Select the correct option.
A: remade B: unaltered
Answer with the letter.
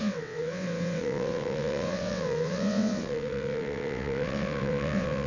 A